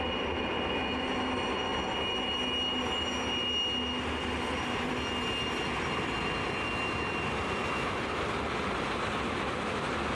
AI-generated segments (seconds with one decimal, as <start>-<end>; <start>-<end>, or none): none